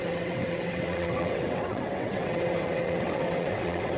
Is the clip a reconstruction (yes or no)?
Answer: yes